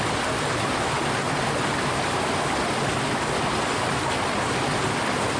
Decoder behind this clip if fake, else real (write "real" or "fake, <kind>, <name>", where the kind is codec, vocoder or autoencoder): real